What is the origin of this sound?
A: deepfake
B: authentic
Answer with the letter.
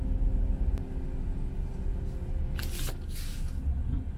B